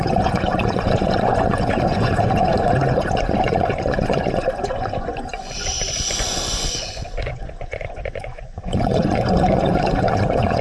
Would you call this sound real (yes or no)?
no